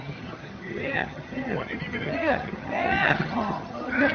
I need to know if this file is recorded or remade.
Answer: remade